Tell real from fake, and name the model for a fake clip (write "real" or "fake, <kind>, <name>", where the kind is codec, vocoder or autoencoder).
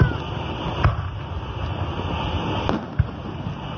real